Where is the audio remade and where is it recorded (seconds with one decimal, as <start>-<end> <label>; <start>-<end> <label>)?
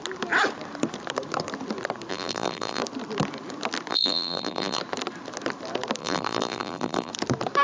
0.0-2.1 recorded; 2.1-2.8 remade; 2.8-3.9 recorded; 3.9-4.8 remade; 4.8-6.0 recorded; 6.0-7.1 remade; 7.1-7.6 recorded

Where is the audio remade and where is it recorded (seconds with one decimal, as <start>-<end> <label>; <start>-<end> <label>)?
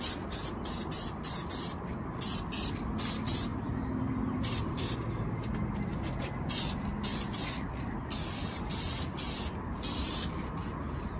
0.0-3.5 recorded; 3.5-4.8 remade; 4.8-11.2 recorded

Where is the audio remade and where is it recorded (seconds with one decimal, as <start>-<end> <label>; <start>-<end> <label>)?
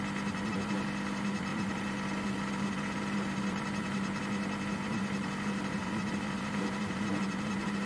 0.0-1.5 recorded; 1.5-4.2 remade; 4.2-4.7 recorded; 4.7-7.9 remade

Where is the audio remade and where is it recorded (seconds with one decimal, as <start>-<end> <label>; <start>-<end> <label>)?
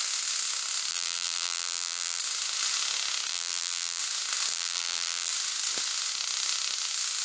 0.0-0.9 recorded; 0.9-2.2 remade; 2.2-3.3 recorded; 3.3-4.0 remade; 4.0-4.5 recorded; 4.5-5.3 remade; 5.3-7.2 recorded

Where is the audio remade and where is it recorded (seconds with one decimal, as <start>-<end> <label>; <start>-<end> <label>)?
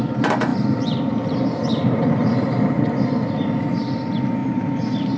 0.0-0.5 recorded; 0.5-2.9 remade; 2.9-4.4 recorded; 4.4-5.2 remade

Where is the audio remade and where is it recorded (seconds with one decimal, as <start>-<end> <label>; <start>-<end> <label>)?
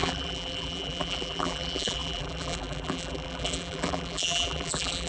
0.0-5.1 remade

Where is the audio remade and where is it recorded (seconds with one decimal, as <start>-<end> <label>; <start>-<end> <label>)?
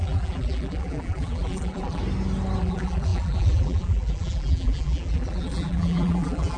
0.0-2.0 remade; 2.0-2.6 recorded; 2.6-6.6 remade